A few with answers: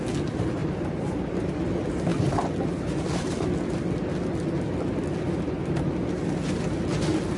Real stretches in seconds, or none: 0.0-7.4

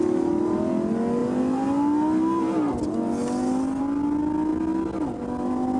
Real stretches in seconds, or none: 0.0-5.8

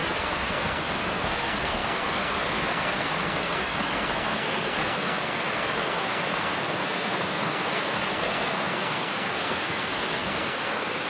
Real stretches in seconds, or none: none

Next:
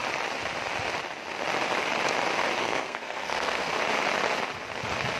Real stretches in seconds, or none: 0.0-2.6; 3.7-5.2

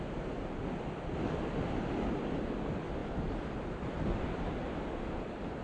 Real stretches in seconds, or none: 0.0-5.6

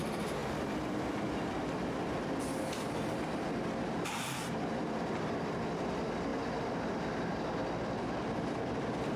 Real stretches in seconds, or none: 6.3-6.9

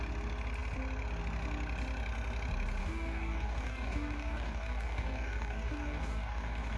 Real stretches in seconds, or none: 0.0-2.8

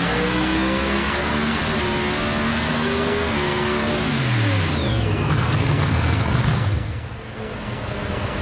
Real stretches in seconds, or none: 1.6-2.5; 3.9-4.9